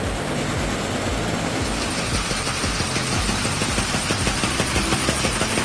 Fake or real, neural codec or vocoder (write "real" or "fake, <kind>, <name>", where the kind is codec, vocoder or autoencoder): real